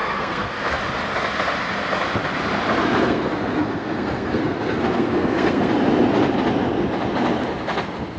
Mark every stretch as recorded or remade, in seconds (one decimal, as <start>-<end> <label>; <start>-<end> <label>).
0.0-0.8 remade; 0.8-2.8 recorded; 2.8-5.7 remade; 5.7-8.2 recorded